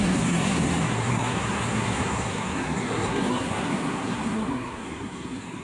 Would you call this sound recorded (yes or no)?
no